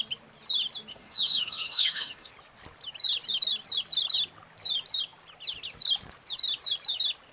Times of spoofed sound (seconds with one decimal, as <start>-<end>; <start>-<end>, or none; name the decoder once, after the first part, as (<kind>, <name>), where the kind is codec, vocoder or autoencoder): 0.9-2.3 (autoencoder, DAC-VAE)